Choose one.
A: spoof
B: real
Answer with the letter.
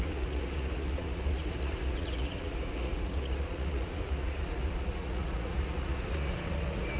A